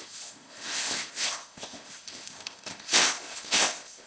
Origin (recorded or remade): remade